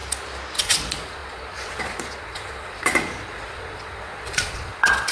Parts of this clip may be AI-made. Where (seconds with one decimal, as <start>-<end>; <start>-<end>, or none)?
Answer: 0.6-5.1